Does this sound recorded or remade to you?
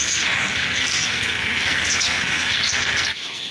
remade